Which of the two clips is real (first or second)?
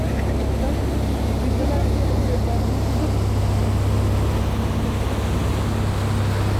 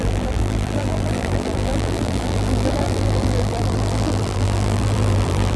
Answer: first